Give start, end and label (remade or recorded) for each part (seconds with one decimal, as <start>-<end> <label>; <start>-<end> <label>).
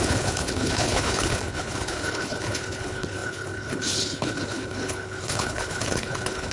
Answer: 0.0-6.5 remade